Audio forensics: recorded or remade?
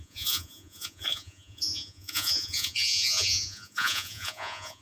remade